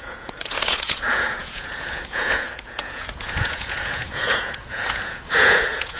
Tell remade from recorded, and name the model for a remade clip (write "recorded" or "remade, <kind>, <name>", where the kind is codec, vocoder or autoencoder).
remade, vocoder, Vocos